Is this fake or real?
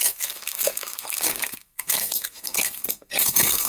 fake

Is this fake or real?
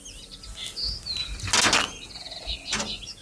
real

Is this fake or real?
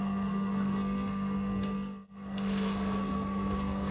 fake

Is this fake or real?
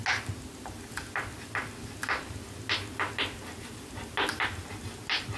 real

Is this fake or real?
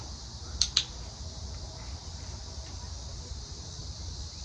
real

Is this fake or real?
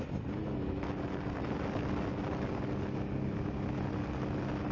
real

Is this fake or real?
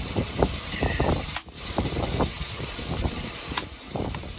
fake